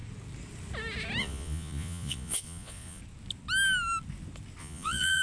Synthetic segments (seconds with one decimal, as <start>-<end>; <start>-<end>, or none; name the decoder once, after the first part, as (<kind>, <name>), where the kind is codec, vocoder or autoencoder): 1.2-3.0 (vocoder, Vocos); 4.6-5.2